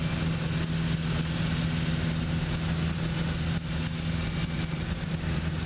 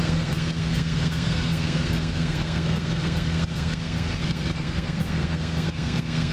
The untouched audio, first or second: first